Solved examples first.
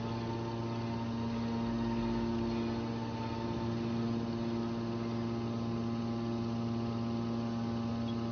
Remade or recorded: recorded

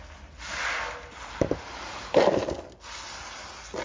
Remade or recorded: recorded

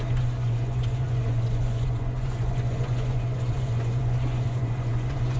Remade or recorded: remade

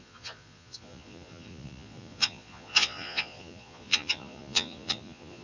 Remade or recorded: remade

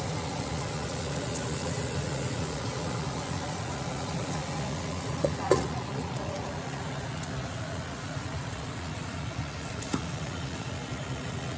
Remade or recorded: remade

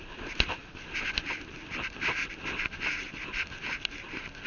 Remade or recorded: recorded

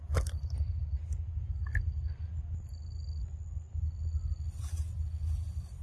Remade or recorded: recorded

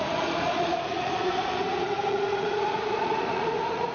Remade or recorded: remade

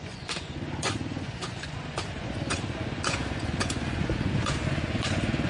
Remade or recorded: remade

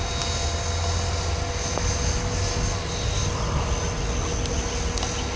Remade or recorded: recorded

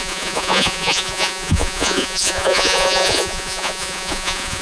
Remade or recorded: remade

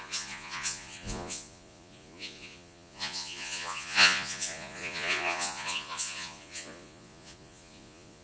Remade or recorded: remade